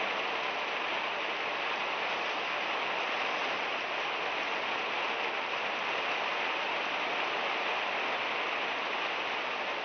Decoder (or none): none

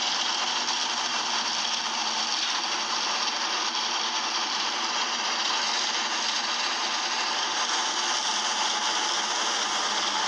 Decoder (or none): none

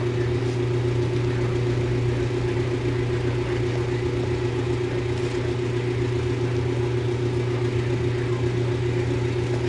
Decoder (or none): none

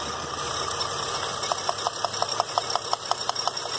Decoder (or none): none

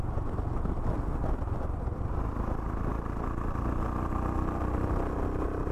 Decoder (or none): none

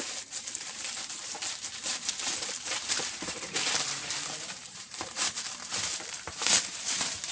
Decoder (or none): vocoder, BigVGAN v2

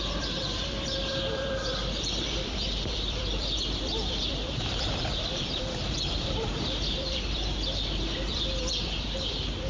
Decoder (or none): vocoder, BigVGAN v2